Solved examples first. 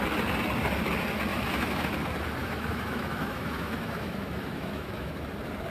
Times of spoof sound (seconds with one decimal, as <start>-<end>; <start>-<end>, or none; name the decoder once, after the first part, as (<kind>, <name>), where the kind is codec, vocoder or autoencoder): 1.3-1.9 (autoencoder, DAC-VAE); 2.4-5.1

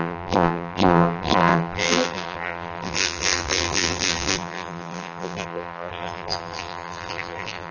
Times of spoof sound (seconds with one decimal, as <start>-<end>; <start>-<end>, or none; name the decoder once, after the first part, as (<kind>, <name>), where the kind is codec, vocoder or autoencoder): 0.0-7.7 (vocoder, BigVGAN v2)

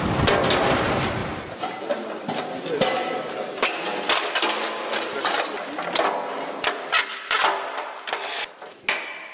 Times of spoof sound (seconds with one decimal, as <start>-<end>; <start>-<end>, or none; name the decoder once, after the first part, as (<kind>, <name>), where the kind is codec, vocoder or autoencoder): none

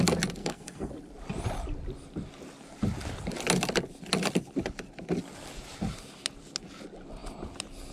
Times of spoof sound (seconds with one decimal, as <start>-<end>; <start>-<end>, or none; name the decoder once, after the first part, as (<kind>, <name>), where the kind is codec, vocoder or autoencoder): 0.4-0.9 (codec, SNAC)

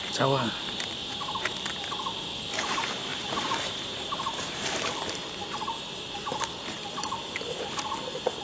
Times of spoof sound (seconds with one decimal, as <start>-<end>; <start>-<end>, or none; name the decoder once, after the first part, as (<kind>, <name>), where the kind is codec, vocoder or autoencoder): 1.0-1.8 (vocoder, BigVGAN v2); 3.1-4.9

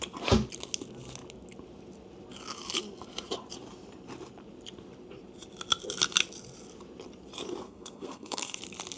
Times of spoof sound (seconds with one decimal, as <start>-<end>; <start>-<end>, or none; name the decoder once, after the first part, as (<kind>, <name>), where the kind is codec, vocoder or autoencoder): 7.6-8.6 (codec, SNAC)